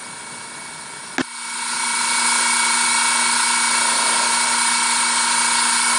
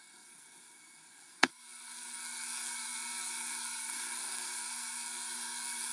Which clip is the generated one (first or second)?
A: second